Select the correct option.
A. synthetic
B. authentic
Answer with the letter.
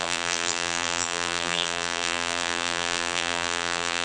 A